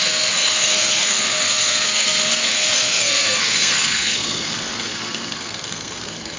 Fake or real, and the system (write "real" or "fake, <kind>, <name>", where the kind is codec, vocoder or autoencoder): fake, codec, SNAC